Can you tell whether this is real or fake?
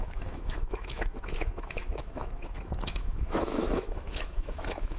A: fake